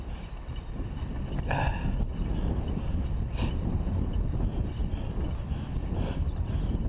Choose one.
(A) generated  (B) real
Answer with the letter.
B